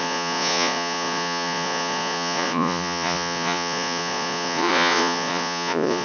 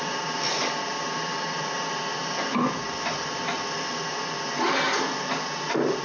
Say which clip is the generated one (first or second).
first